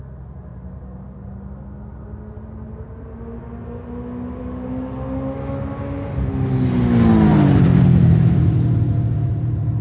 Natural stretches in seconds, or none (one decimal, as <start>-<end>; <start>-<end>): 0.0-7.3